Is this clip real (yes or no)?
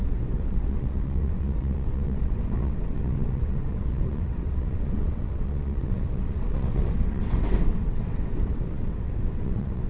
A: no